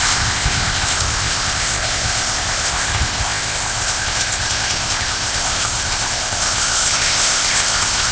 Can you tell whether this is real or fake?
fake